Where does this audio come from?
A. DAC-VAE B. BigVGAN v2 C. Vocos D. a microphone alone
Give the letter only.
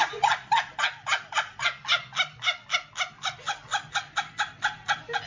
D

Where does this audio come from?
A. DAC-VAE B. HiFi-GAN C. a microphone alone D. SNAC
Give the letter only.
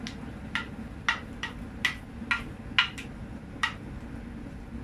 C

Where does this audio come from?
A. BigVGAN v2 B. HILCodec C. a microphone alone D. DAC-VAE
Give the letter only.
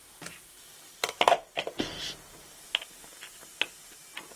C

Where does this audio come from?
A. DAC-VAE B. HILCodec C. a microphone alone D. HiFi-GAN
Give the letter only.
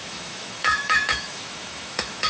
A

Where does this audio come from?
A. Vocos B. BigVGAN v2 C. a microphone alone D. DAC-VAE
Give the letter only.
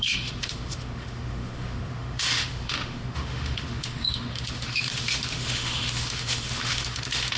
D